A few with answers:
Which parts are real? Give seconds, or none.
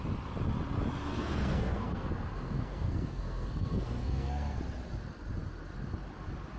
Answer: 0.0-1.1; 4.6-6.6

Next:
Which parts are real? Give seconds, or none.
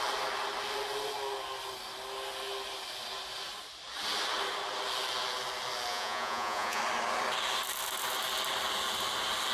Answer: 0.0-5.9; 6.8-9.5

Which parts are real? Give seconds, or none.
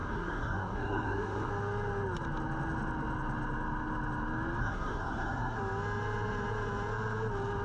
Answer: 1.5-4.6; 5.6-7.6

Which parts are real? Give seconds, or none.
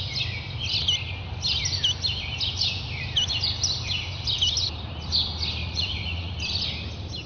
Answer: 0.0-5.6; 6.4-7.3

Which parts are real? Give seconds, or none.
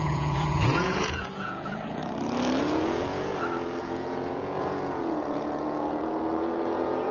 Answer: 2.0-2.6; 3.3-3.8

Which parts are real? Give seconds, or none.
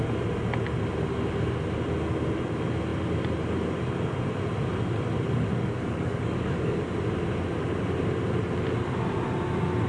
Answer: 0.0-5.5; 6.8-9.9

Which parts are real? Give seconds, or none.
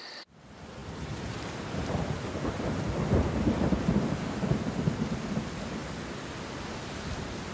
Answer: 0.0-7.5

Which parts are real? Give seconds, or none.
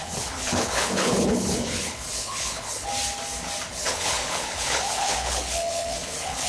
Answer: 2.9-3.7